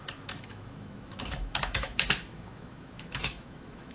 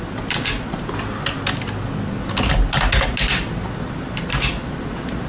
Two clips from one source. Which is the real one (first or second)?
second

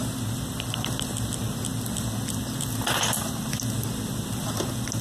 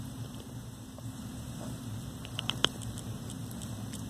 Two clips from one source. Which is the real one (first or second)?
first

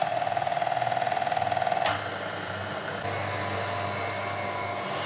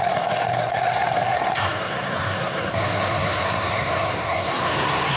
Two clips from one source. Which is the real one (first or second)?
first